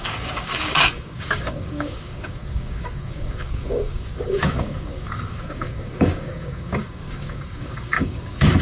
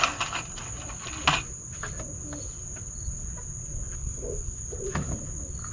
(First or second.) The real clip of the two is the second